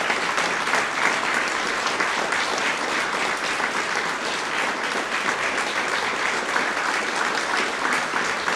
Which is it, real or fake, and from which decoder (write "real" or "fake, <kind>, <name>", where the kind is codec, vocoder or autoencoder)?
real